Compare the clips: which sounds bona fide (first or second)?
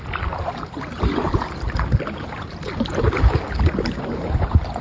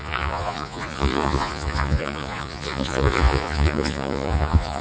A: first